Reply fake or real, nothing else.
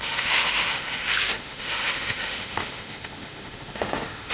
fake